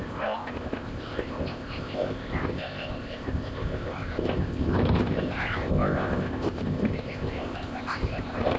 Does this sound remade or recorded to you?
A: remade